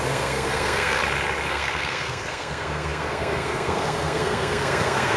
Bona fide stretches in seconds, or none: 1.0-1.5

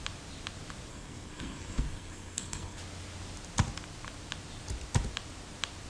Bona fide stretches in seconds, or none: 0.0-0.9; 2.8-5.9

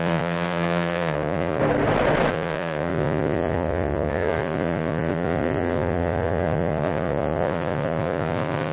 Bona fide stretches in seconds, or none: 1.6-2.3

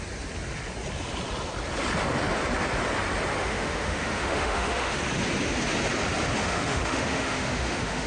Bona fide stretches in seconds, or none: 0.0-3.4; 5.0-6.4

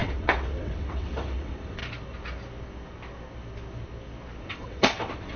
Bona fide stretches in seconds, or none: 1.8-4.4

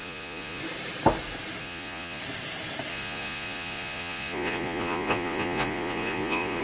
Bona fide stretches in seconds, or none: 0.6-1.6; 2.2-2.9